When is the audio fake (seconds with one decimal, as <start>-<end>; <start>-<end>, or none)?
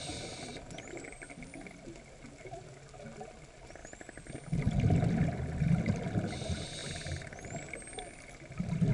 none